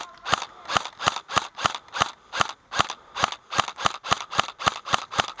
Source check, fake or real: real